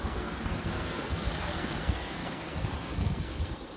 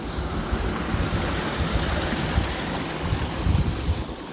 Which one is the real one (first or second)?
second